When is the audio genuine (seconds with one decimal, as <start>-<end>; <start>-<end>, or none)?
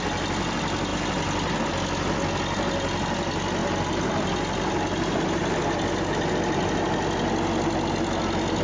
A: 0.0-8.6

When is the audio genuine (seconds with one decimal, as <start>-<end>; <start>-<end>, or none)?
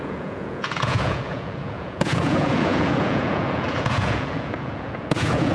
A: none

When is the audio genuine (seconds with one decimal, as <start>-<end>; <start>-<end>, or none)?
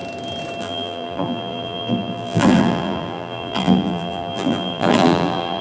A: 0.0-0.6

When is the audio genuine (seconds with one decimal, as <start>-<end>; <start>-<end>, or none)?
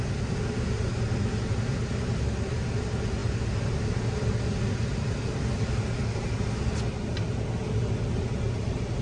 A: 0.0-9.0